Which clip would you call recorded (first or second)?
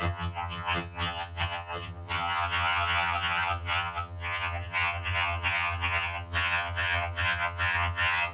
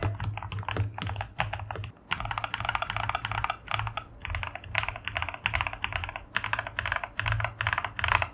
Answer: second